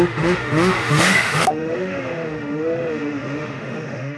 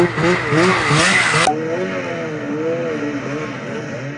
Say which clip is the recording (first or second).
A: second